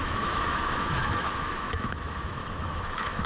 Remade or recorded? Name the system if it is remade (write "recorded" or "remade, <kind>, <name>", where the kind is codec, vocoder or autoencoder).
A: remade, autoencoder, DAC-VAE